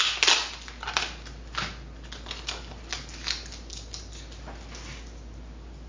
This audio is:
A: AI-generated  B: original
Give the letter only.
B